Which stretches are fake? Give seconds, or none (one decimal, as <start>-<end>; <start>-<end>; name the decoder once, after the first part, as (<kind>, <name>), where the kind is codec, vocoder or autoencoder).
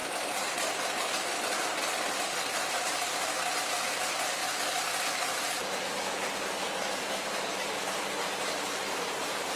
2.7-9.6 (vocoder, BigVGAN v2)